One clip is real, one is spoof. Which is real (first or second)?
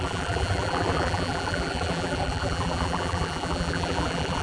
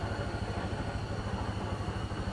second